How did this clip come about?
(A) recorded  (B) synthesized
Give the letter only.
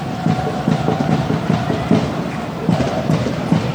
B